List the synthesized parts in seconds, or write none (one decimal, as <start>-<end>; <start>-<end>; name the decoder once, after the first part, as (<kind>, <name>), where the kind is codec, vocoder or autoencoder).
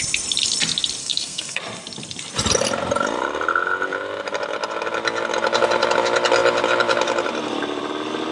1.0-1.6 (codec, SNAC)